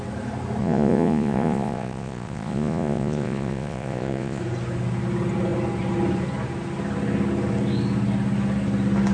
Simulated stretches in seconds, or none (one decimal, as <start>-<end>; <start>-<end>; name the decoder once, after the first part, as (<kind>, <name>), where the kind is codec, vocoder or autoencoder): 0.6-4.4 (vocoder, Vocos)